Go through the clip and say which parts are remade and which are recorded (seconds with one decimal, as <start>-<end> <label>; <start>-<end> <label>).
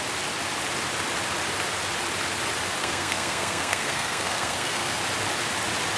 0.0-2.8 recorded; 2.8-5.0 remade; 5.0-6.0 recorded